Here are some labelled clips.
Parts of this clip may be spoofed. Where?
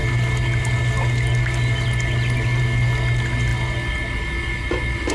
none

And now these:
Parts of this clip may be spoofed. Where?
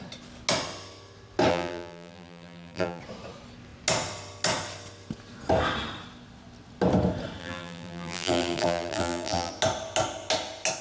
1.5-3.0; 7.4-9.5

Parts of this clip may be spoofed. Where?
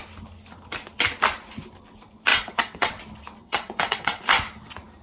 2.3-3.0; 3.4-4.2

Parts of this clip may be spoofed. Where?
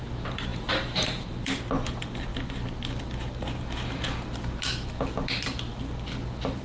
0.5-1.6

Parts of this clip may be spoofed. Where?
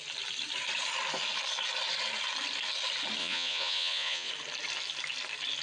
3.2-4.3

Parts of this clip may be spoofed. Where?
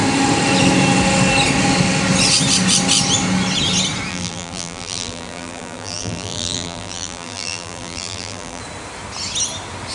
4.1-8.6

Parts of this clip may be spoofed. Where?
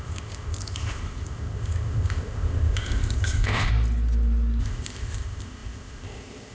0.0-3.7; 4.6-6.5